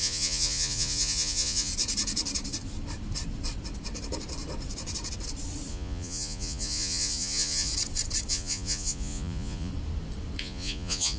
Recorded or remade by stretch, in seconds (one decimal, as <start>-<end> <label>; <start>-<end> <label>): 0.0-1.7 remade; 1.7-5.7 recorded; 5.7-7.7 remade; 7.7-8.3 recorded; 8.3-9.7 remade; 9.7-10.4 recorded; 10.4-11.2 remade